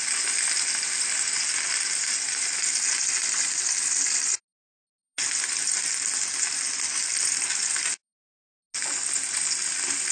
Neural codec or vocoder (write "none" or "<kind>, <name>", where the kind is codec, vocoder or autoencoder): none